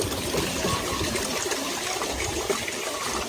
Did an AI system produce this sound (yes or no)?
no